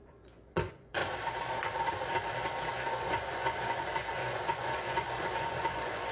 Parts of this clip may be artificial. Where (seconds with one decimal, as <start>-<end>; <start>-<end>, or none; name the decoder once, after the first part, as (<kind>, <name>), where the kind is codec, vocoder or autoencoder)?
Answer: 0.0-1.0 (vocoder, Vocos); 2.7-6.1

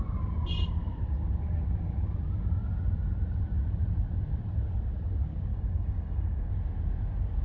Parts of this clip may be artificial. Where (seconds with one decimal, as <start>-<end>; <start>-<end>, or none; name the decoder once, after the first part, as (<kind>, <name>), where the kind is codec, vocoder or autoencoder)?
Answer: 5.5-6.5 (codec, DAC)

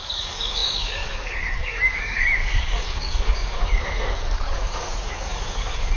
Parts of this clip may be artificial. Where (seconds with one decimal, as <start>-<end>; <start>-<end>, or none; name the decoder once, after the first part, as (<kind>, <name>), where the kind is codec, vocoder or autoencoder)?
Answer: 0.0-6.0 (codec, DAC)